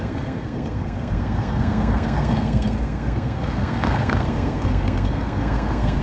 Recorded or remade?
remade